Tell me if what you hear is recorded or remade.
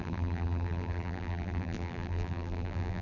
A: remade